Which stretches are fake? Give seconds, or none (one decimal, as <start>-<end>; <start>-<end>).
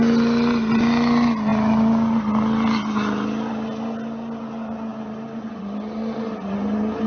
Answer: none